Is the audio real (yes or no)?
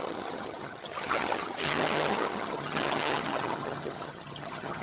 no